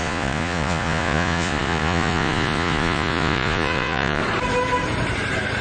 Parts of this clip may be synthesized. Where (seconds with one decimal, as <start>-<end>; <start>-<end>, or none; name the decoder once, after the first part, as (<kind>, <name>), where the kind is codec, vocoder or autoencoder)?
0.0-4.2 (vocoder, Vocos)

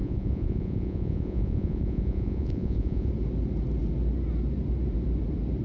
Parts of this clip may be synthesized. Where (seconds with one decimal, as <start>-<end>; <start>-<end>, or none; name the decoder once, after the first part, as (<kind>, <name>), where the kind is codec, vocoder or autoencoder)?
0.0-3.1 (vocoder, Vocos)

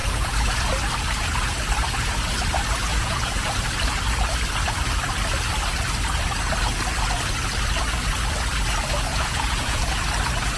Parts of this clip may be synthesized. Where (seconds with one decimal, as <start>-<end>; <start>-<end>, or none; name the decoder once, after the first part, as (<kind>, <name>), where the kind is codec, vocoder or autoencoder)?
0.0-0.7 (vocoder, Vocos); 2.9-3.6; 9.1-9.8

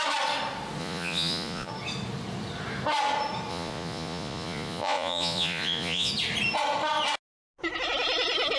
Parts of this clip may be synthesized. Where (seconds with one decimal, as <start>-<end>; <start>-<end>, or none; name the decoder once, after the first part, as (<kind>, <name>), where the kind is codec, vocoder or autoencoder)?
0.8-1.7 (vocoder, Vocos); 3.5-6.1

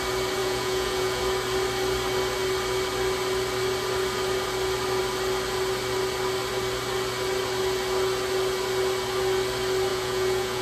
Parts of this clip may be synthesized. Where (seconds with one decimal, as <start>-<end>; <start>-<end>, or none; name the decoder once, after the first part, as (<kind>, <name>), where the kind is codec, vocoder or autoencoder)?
0.4-1.2 (vocoder, Vocos); 9.9-10.6

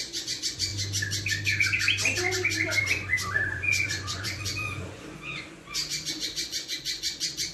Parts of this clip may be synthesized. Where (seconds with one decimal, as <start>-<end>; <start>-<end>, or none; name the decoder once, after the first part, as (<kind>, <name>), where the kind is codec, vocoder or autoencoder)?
0.0-0.7 (vocoder, Vocos); 2.8-7.5